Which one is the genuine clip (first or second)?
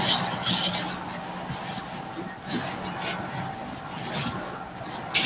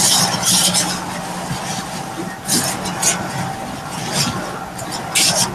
first